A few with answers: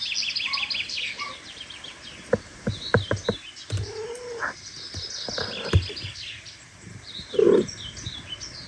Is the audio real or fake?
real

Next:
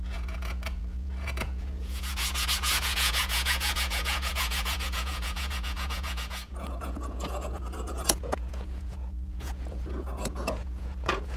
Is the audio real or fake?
fake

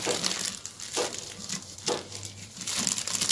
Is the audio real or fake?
real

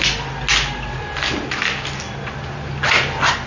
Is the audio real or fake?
real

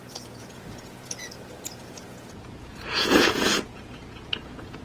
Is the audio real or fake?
fake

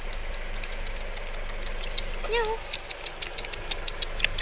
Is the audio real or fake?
real